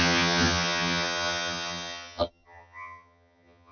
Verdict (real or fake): fake